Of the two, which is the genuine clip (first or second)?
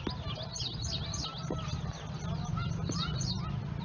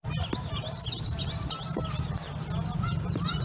first